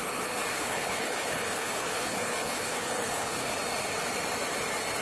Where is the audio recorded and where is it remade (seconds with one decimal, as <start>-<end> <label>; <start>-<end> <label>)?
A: 0.0-0.5 recorded; 0.5-3.5 remade; 3.5-5.0 recorded